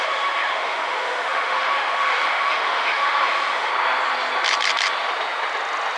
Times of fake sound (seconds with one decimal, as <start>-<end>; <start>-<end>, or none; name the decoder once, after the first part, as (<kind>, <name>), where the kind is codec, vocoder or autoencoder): 0.0-3.7 (autoencoder, DAC-VAE)